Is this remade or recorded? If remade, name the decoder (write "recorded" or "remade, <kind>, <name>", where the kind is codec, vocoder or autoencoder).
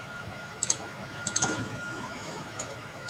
remade, autoencoder, DAC-VAE